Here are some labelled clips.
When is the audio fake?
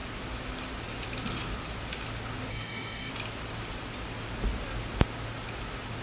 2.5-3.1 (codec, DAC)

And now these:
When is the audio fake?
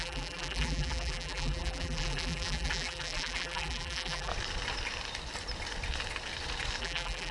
0.0-4.3 (vocoder, BigVGAN v2); 6.8-7.3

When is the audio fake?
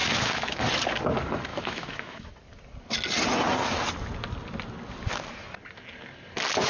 0.0-0.6 (autoencoder, DAC-VAE); 1.5-2.3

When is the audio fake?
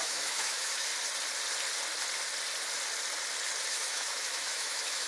0.0-0.9 (autoencoder, DAC-VAE); 3.7-5.1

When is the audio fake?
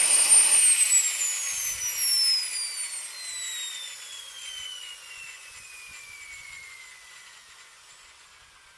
3.7-8.8 (vocoder, Vocos)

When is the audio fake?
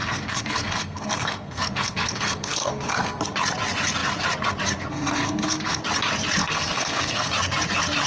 0.0-3.2 (codec, SNAC); 4.9-5.8; 6.4-7.3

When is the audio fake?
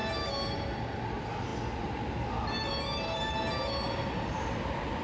none